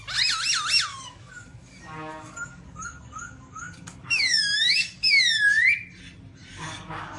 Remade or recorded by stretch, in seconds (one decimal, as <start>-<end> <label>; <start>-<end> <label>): 0.0-0.9 recorded; 0.9-5.2 remade; 5.2-6.5 recorded; 6.5-7.2 remade